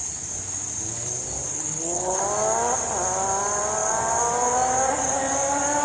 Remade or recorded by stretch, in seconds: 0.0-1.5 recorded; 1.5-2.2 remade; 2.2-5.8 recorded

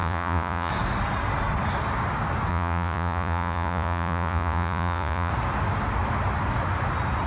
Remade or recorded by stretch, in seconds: 0.0-0.7 remade; 0.7-2.5 recorded; 2.5-5.3 remade; 5.3-7.3 recorded

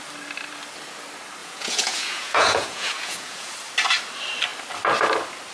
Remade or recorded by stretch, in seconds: 0.0-1.4 recorded; 1.4-3.5 remade; 3.5-5.5 recorded

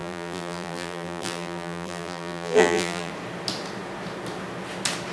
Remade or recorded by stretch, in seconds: 0.0-3.1 remade; 3.1-5.1 recorded

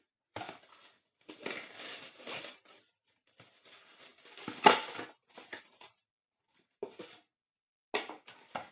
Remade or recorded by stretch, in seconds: 0.0-8.7 recorded